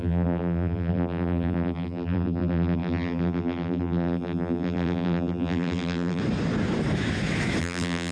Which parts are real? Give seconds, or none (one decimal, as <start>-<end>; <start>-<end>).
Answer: 6.2-7.6